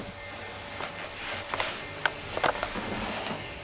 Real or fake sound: real